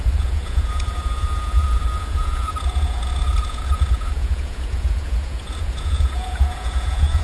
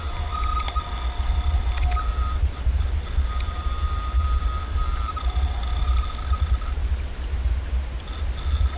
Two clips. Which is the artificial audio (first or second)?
first